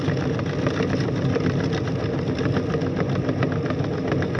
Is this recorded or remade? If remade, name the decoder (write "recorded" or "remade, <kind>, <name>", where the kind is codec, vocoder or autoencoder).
recorded